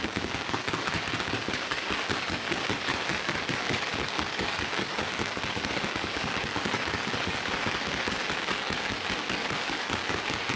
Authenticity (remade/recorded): remade